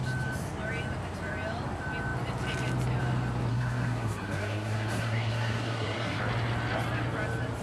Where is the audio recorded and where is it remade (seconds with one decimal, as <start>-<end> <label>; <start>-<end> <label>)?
0.0-3.5 recorded; 3.5-6.2 remade; 6.2-7.6 recorded